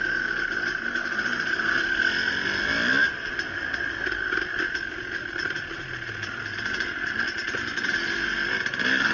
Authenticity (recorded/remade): recorded